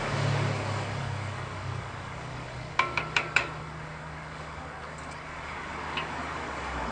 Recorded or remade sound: remade